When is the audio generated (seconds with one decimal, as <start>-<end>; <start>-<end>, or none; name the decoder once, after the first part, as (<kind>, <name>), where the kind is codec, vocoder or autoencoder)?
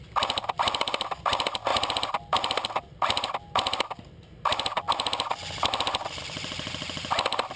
none